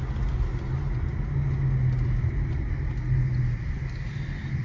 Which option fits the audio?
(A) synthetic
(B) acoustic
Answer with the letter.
B